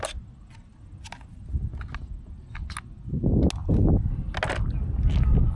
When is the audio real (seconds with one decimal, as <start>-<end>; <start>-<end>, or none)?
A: 0.0-5.6